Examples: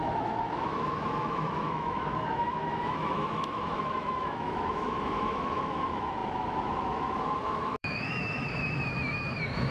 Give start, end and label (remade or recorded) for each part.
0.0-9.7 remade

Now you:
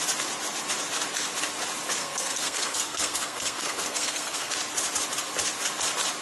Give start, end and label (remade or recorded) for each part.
0.0-2.0 recorded; 2.0-4.5 remade; 4.5-6.2 recorded